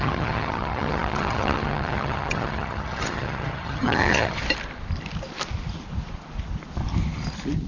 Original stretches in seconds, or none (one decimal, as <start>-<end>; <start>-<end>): 4.4-7.7